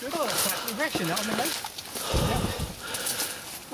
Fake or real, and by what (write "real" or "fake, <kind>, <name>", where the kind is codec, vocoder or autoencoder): real